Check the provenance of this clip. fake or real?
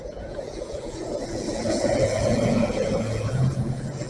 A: fake